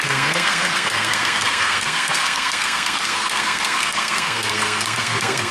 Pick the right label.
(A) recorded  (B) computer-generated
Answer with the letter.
B